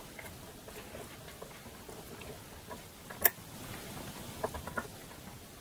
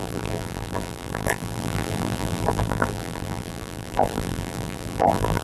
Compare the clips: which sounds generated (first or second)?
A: second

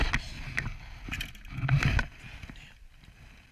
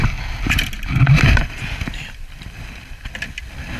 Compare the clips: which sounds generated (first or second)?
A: second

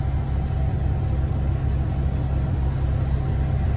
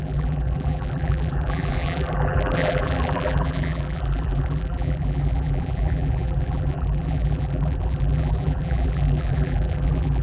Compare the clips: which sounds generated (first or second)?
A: second